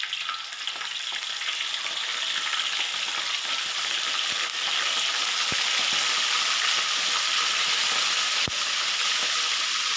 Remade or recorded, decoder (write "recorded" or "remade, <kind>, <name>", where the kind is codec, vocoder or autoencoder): recorded